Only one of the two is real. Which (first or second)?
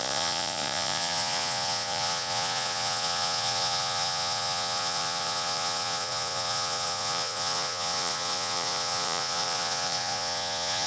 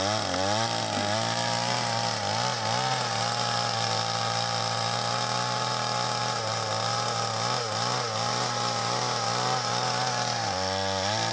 second